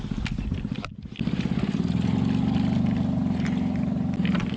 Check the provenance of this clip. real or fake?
real